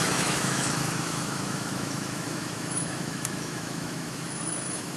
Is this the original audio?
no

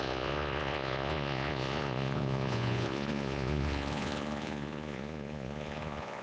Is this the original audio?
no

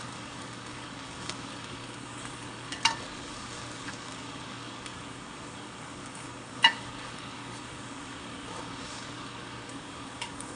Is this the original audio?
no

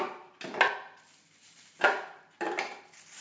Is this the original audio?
yes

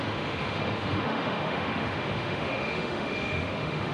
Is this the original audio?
no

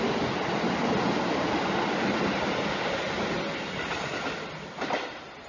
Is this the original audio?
yes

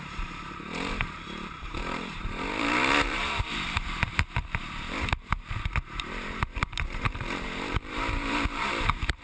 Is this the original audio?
no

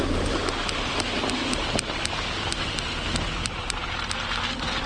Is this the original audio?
yes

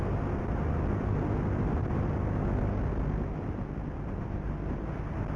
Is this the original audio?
yes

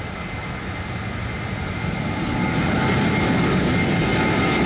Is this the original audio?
yes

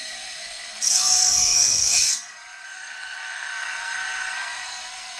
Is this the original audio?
no